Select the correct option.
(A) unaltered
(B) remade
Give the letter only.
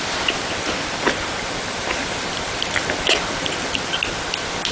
A